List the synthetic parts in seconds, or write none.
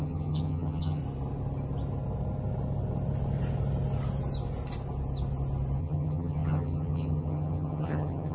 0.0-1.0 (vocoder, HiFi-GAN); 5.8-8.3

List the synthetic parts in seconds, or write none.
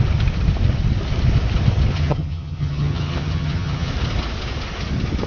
1.9-3.9 (vocoder, HiFi-GAN)